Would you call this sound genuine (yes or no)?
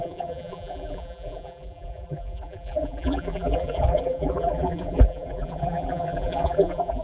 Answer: no